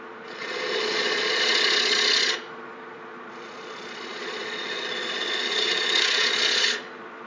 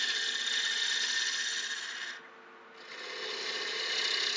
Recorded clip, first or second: second